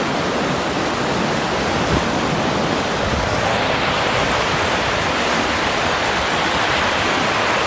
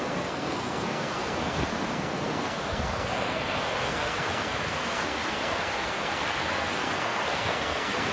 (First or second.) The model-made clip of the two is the second